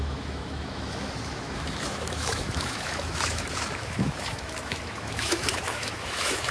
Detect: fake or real fake